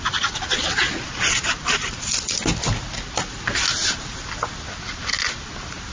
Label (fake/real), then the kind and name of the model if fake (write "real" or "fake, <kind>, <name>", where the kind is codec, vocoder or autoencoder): real